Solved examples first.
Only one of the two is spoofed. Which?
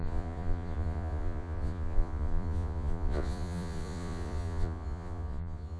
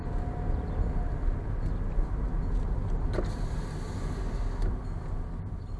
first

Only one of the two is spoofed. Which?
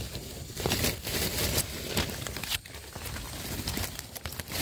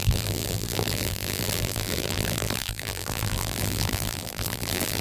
second